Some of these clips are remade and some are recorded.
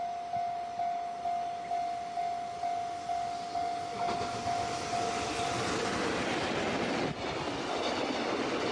recorded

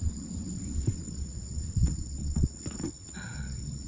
remade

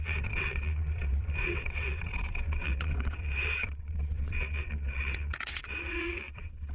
remade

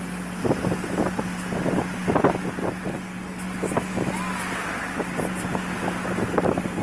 recorded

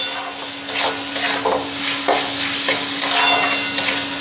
recorded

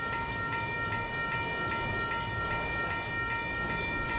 recorded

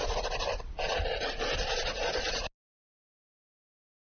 recorded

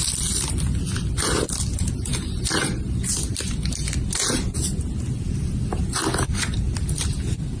recorded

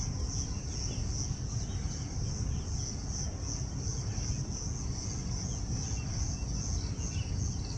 recorded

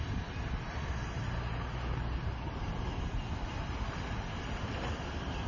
recorded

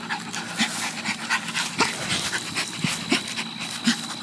recorded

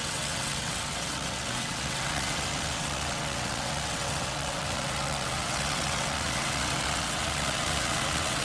remade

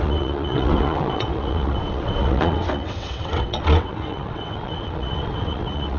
remade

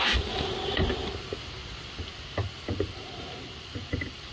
recorded